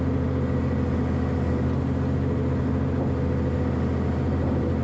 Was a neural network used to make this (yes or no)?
no